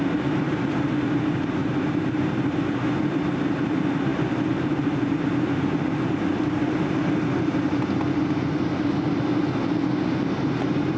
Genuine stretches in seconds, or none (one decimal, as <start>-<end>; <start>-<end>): 0.0-11.0